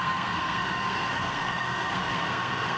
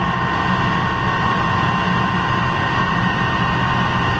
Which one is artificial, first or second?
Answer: first